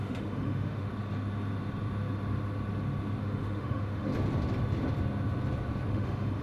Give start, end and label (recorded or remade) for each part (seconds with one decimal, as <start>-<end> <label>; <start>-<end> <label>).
0.0-0.9 remade; 0.9-3.2 recorded; 3.2-4.1 remade; 4.1-5.9 recorded; 5.9-6.4 remade